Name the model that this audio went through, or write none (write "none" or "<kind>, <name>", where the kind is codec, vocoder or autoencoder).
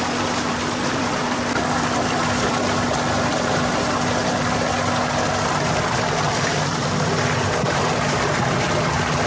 none